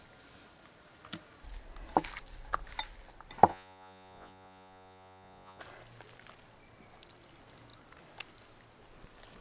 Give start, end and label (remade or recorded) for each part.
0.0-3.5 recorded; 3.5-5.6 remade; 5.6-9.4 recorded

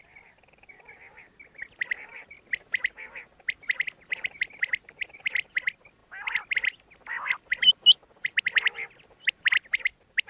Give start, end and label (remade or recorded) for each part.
0.0-10.3 recorded

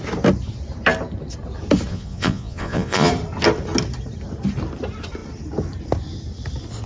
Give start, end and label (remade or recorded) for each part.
0.0-1.9 recorded; 1.9-3.1 remade; 3.1-6.9 recorded

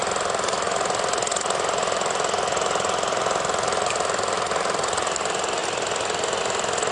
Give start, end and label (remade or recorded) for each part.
0.0-6.9 recorded

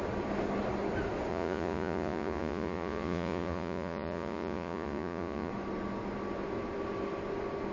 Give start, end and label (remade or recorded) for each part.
0.0-1.3 recorded; 1.3-5.5 remade; 5.5-7.7 recorded

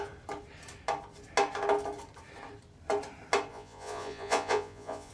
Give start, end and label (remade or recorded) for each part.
0.0-3.5 recorded; 3.5-5.1 remade

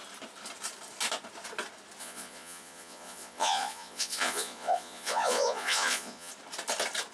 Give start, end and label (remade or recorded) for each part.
0.0-2.0 recorded; 2.0-6.3 remade; 6.3-7.1 recorded

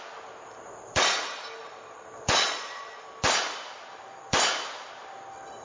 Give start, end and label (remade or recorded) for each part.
0.0-1.6 recorded; 1.6-3.0 remade; 3.0-5.6 recorded